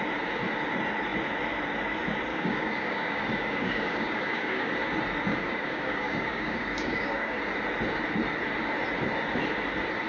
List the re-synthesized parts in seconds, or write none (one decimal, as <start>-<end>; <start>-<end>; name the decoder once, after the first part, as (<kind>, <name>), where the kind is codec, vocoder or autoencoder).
2.3-4.7 (codec, DAC); 5.3-7.4